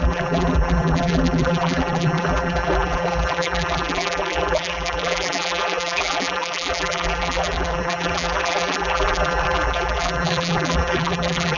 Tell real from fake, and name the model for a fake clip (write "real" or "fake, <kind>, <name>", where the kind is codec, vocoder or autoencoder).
fake, vocoder, BigVGAN v2